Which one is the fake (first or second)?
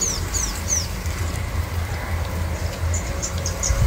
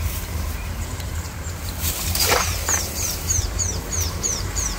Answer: second